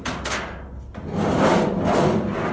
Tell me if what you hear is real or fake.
real